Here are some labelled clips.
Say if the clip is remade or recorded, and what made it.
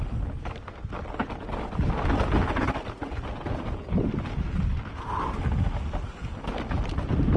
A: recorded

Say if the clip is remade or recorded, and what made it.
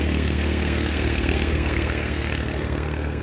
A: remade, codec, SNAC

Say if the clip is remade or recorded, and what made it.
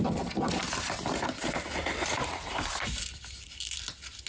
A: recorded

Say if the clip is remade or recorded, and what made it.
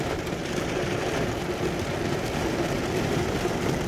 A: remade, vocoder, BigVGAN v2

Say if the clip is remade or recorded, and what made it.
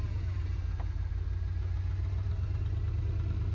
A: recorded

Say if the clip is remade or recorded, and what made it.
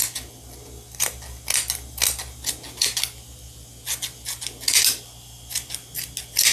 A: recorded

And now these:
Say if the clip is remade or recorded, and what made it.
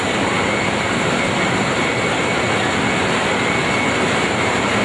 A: recorded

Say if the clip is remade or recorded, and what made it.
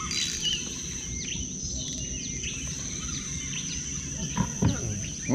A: recorded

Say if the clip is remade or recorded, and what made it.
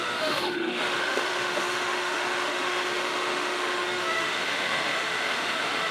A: remade, autoencoder, DAC-VAE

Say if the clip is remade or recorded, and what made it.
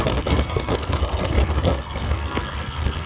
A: remade, codec, SNAC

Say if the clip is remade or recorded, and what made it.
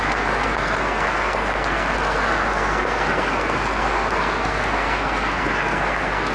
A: remade, codec, SNAC